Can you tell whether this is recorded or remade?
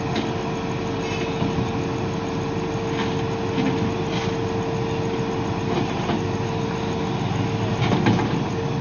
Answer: recorded